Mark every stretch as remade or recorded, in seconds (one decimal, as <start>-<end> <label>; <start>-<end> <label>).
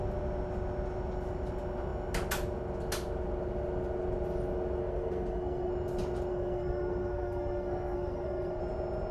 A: 0.0-4.8 recorded; 4.8-5.7 remade; 5.7-6.3 recorded; 6.3-8.6 remade; 8.6-9.1 recorded